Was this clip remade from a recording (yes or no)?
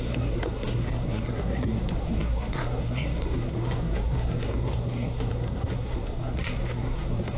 yes